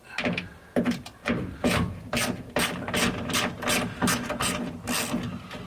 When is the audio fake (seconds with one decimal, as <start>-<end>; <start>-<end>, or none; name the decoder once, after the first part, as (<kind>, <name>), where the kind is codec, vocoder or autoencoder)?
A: none